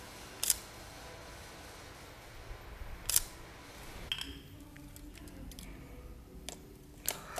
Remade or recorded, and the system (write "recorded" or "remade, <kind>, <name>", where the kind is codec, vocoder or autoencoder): recorded